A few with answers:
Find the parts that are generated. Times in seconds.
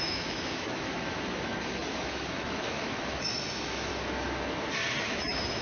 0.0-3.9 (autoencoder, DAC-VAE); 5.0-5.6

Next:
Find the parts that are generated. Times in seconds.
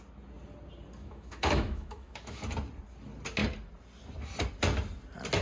1.0-2.4 (autoencoder, DAC-VAE)